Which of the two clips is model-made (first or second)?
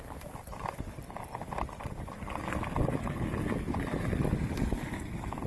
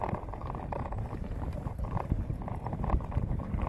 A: second